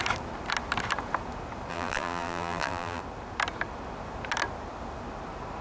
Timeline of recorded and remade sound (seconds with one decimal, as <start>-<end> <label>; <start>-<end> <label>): 0.0-1.7 recorded; 1.7-3.0 remade; 3.0-5.6 recorded